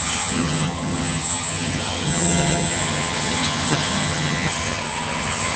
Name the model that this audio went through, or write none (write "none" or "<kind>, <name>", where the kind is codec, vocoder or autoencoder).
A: vocoder, HiFi-GAN